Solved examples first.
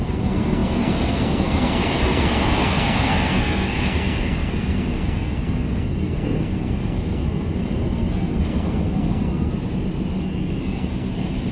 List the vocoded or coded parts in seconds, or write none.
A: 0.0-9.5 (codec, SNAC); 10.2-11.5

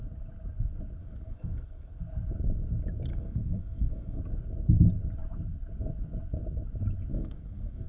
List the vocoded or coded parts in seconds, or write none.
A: 1.0-2.0 (codec, SNAC); 3.1-4.2; 7.1-7.9

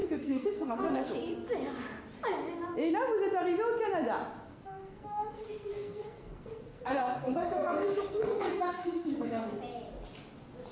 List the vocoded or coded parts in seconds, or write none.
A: 0.0-1.1 (codec, SNAC); 4.5-9.5

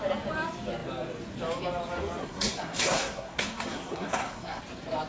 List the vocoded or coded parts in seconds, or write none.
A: 2.2-4.6 (codec, SNAC)

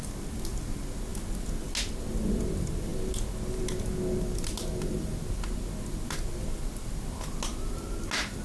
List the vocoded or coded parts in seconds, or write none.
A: none

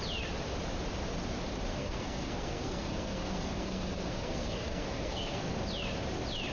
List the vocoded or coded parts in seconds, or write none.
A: 1.7-5.6 (codec, SNAC)

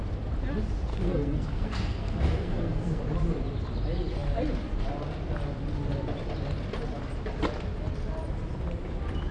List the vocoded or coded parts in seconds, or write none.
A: 0.9-3.0 (codec, SNAC)

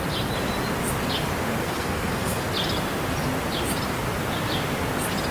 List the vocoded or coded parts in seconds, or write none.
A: 1.6-2.4 (codec, SNAC)